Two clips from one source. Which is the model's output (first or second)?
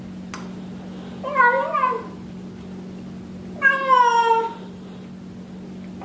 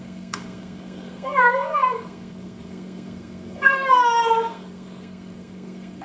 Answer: second